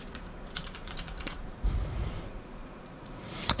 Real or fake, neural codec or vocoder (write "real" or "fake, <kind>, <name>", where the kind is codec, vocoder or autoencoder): fake, vocoder, Vocos